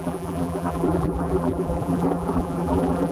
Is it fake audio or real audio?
fake